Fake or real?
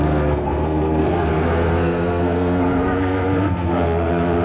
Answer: fake